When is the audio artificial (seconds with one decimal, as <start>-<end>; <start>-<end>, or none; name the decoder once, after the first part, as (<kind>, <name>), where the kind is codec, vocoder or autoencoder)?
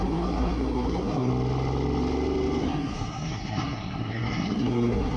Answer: 0.0-1.3 (codec, SNAC); 2.6-5.2